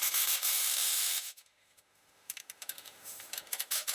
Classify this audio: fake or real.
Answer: fake